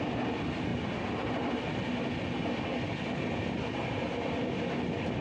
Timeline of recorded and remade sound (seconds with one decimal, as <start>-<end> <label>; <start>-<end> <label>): 0.0-5.2 recorded